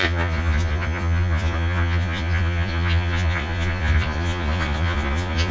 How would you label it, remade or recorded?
remade